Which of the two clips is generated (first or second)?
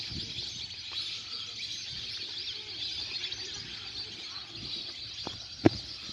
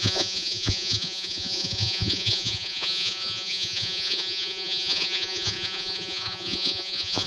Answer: second